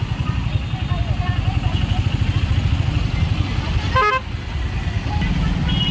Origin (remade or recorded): recorded